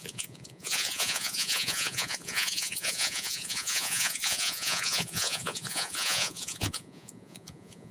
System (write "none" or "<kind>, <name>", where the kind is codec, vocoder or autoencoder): vocoder, Vocos